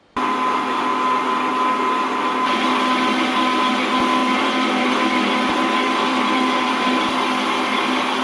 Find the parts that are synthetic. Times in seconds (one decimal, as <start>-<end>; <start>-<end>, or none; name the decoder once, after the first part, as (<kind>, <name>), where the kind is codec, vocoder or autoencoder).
4.2-6.7 (vocoder, BigVGAN v2)

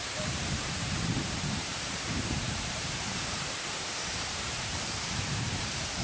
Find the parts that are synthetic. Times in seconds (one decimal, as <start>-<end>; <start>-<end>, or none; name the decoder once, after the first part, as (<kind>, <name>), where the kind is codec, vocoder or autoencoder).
0.0-6.0 (vocoder, BigVGAN v2)